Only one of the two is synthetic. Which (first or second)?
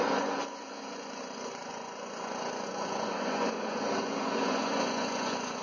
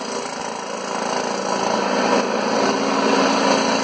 first